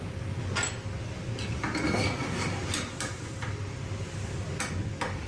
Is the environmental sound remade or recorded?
recorded